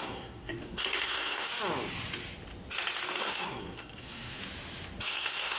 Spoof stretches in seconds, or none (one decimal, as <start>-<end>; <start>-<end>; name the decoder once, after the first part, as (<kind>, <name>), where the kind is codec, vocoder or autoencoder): 0.0-1.5 (codec, SNAC); 3.2-4.4; 5.0-5.6